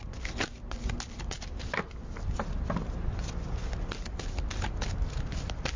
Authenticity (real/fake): real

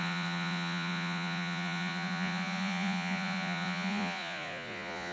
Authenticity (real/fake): fake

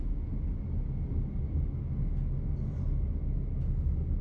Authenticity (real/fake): real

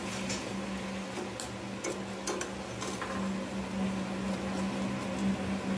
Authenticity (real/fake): real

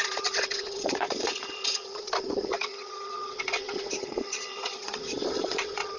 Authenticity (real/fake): fake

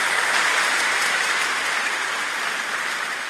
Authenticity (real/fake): real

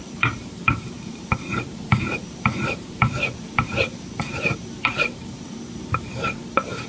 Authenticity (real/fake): fake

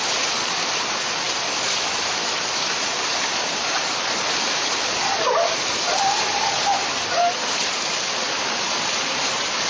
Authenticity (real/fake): fake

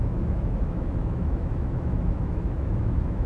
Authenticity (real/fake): fake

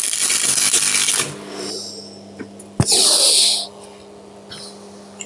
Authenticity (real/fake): real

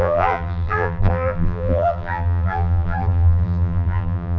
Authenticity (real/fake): fake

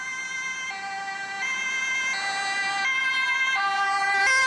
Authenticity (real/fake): real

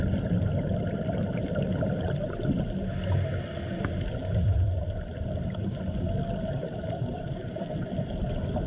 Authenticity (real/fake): real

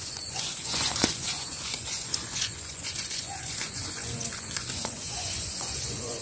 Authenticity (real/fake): fake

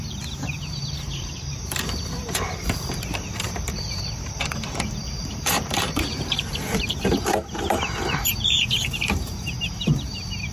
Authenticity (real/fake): fake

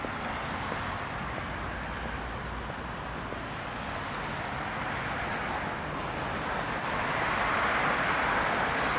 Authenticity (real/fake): real